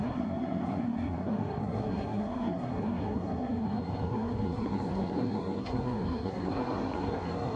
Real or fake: fake